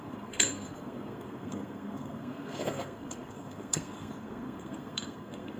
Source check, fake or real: fake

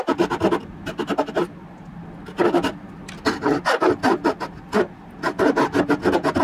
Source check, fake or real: real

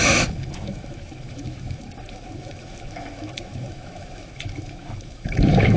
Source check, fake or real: fake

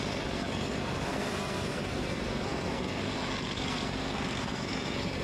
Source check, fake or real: fake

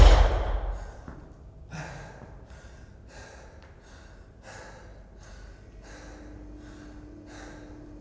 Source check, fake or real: real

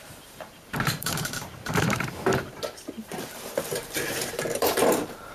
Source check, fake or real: fake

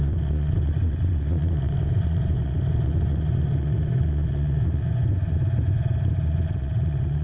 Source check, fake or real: fake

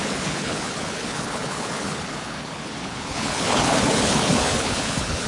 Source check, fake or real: fake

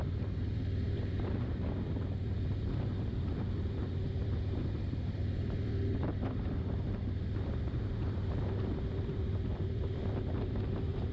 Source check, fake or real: fake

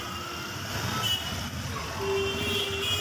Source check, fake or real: real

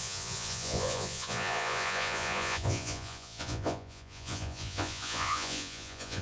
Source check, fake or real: fake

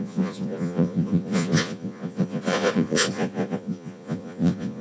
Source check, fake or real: fake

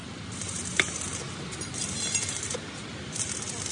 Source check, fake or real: fake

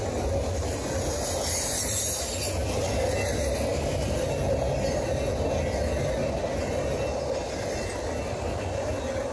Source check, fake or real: real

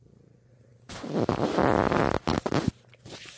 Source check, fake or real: real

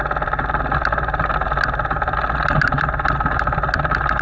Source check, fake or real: real